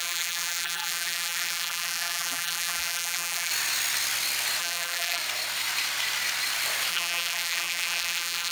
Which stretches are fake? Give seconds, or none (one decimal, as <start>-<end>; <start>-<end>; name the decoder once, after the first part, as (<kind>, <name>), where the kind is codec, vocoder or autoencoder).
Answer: 0.0-3.5 (vocoder, BigVGAN v2); 4.6-5.2; 6.9-8.5